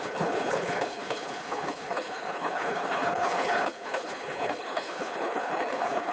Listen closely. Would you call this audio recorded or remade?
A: remade